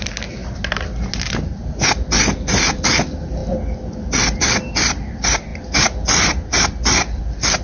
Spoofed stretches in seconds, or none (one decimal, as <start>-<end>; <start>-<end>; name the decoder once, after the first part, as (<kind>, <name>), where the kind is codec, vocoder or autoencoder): none